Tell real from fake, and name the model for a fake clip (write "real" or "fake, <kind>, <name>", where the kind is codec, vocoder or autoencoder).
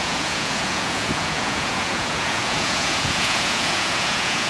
fake, vocoder, Vocos